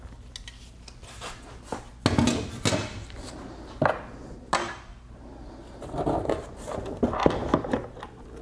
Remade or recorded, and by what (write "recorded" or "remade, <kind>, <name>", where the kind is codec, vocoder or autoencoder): recorded